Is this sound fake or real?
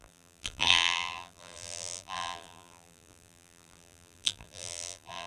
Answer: fake